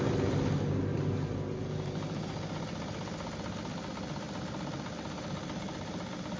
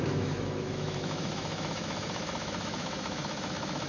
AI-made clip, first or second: second